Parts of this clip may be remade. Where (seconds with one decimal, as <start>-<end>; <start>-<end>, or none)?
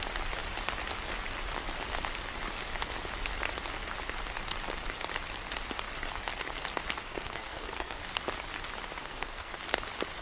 7.0-8.0; 9.0-9.5